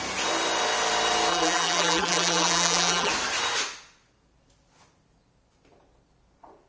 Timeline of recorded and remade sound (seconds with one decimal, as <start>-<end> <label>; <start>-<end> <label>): 0.0-1.3 recorded; 1.3-3.1 remade; 3.1-6.7 recorded